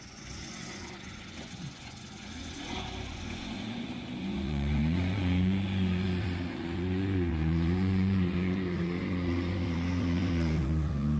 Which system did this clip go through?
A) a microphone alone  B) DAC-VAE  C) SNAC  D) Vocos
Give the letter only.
D